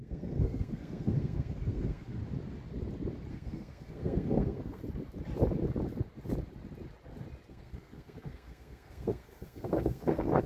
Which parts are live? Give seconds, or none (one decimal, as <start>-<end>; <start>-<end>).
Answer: 2.2-3.3; 4.8-7.5